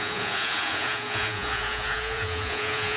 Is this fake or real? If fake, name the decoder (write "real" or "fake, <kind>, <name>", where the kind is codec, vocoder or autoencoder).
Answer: fake, vocoder, Vocos